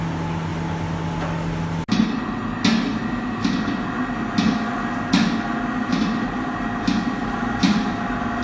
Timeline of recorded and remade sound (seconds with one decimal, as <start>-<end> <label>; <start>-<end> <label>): 0.0-3.1 recorded; 3.1-3.7 remade; 3.7-7.2 recorded; 7.2-8.0 remade; 8.0-8.4 recorded